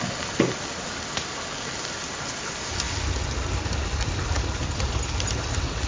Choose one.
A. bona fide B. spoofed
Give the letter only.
A